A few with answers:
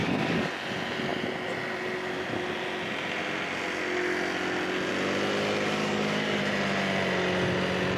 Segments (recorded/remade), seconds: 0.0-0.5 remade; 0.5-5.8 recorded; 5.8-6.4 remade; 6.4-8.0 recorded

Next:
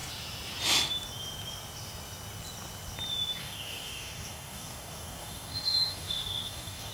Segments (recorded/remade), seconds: 0.0-3.4 recorded; 3.4-6.9 remade